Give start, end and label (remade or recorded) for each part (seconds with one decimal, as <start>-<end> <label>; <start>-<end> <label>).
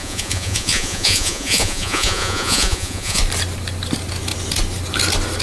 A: 0.0-3.2 remade; 3.2-5.4 recorded